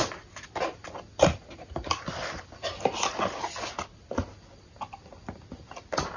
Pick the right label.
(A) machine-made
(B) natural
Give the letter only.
B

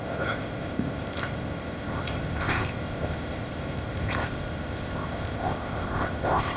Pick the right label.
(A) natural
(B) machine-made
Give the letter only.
B